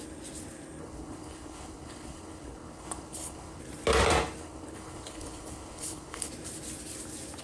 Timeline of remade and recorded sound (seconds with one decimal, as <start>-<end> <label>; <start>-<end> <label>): 0.0-0.8 recorded; 0.8-3.6 remade; 3.6-4.4 recorded; 4.4-6.3 remade; 6.3-7.4 recorded